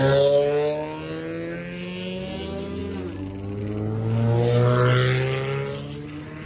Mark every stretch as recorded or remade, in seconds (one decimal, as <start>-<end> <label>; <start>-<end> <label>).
0.0-6.5 recorded